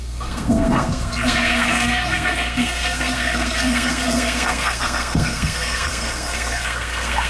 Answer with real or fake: fake